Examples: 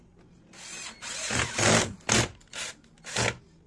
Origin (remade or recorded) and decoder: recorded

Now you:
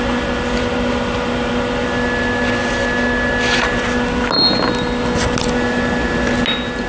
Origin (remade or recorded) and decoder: recorded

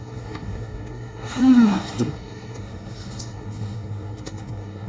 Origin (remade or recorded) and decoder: remade, codec, SNAC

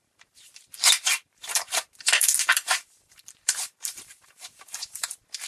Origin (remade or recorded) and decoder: remade, vocoder, BigVGAN v2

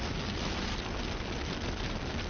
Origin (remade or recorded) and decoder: recorded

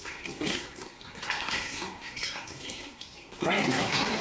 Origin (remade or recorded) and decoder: remade, codec, SNAC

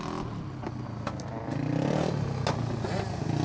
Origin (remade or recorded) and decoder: recorded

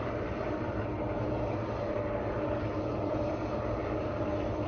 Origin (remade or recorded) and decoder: remade, vocoder, BigVGAN v2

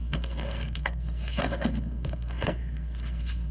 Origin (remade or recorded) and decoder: remade, codec, SNAC